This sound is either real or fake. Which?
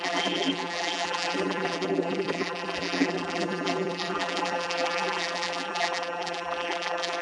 fake